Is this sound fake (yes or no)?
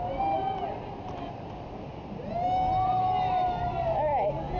no